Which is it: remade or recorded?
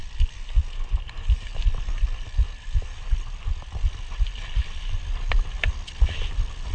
recorded